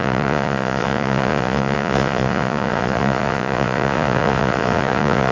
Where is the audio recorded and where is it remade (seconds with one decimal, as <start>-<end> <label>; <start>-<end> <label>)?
0.0-5.3 remade